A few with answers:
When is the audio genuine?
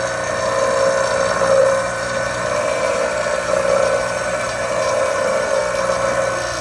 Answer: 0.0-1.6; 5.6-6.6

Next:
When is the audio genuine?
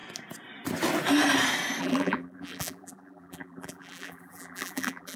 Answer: 0.0-1.8